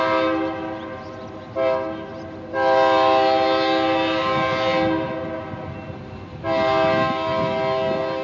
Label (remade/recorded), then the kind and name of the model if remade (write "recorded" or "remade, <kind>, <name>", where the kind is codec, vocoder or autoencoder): recorded